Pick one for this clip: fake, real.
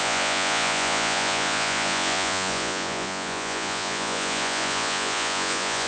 fake